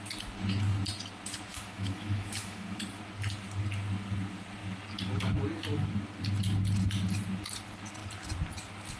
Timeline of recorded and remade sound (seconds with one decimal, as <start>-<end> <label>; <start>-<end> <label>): 0.0-1.5 recorded; 1.5-2.8 remade; 2.8-9.0 recorded